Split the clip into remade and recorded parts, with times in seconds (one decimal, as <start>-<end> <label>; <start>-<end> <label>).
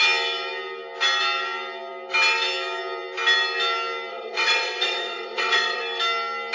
0.0-4.1 recorded; 4.1-5.8 remade; 5.8-6.5 recorded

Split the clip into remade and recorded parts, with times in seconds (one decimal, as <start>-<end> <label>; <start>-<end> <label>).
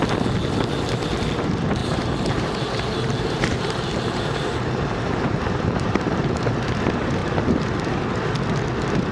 0.0-1.8 recorded; 1.8-6.5 remade; 6.5-9.1 recorded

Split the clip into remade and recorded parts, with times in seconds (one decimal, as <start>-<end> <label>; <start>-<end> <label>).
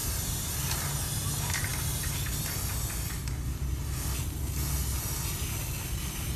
0.0-0.5 remade; 0.5-6.4 recorded